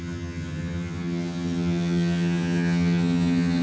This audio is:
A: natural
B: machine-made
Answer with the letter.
B